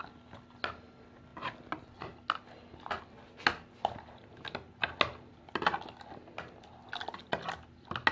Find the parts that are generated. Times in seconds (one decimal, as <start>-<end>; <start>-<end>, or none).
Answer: none